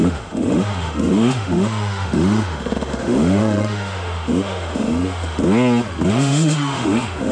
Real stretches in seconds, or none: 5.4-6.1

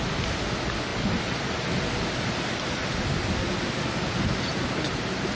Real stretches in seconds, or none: 0.0-5.3

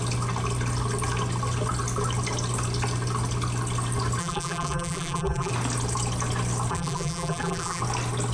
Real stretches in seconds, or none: 0.0-4.2; 5.5-6.7; 7.8-8.3

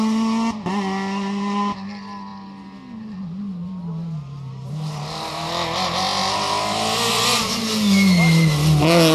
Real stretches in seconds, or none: 0.0-9.1

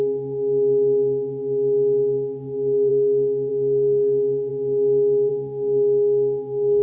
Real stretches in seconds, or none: 0.0-6.8